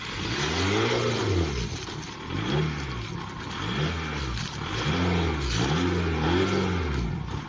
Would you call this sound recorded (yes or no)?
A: yes